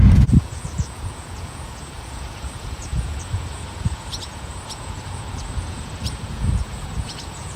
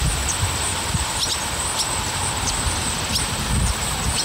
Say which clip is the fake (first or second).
first